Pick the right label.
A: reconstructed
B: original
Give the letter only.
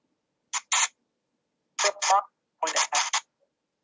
B